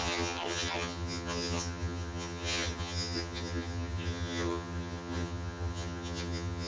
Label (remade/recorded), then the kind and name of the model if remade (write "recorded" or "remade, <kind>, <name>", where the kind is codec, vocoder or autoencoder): remade, vocoder, HiFi-GAN